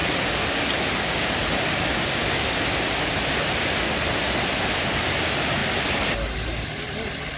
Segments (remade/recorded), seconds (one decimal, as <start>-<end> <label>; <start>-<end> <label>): 0.0-7.4 recorded